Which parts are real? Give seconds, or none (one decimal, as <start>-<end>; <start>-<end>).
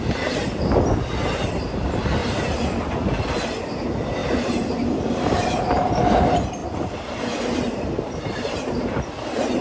0.0-2.2; 2.9-4.2; 5.6-6.6; 8.8-9.6